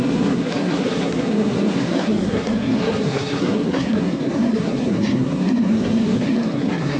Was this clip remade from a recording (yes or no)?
yes